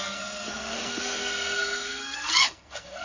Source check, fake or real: fake